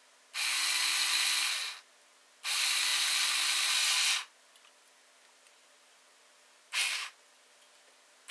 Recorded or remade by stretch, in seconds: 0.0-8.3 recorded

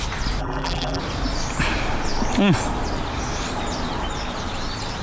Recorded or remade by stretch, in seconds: 0.0-0.4 recorded; 0.4-1.0 remade; 1.0-5.0 recorded

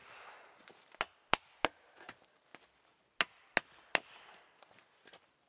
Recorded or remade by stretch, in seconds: 0.0-5.5 recorded

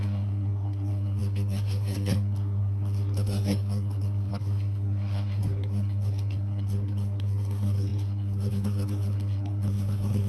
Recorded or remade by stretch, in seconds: 0.0-10.3 remade

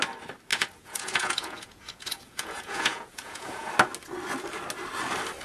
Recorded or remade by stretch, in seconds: 0.0-0.5 recorded; 0.5-3.7 remade; 3.7-5.4 recorded

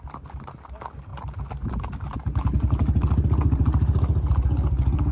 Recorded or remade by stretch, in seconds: 0.0-5.1 recorded